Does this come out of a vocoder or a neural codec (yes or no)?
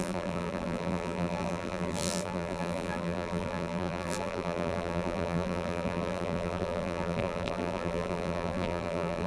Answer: yes